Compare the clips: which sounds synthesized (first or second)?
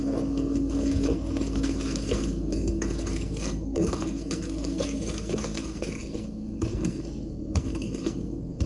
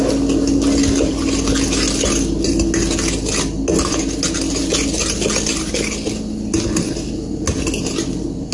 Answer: first